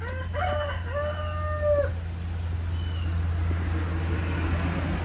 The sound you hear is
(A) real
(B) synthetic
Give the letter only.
A